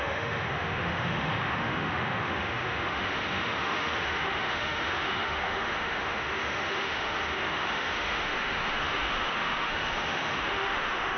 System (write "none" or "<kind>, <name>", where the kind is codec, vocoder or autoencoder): autoencoder, DAC-VAE